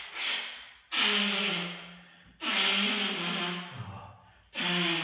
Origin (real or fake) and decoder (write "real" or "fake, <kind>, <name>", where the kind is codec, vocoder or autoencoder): real